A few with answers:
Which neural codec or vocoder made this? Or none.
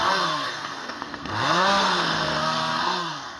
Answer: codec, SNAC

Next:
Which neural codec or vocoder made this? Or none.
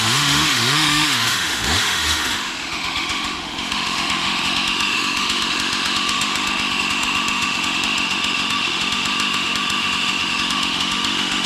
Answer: autoencoder, DAC-VAE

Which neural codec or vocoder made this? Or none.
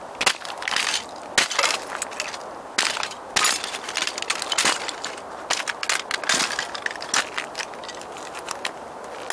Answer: none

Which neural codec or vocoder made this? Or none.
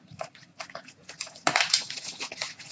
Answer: vocoder, Vocos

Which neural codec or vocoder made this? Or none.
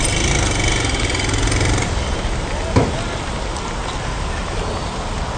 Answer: none